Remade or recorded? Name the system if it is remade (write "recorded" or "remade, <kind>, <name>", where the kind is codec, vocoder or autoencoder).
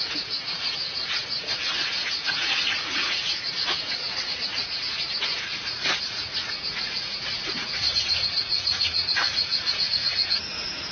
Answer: remade, vocoder, Vocos